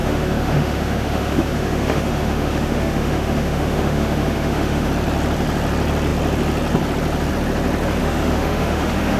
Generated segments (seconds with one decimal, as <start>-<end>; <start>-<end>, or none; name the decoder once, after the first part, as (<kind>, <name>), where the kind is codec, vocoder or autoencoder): 0.0-4.9 (autoencoder, DAC-VAE); 8.0-9.2